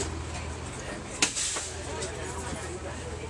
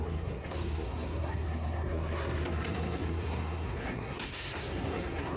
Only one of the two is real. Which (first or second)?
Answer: first